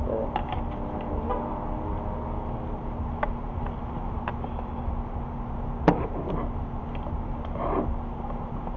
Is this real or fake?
real